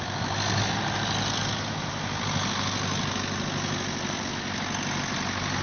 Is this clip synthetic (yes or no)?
no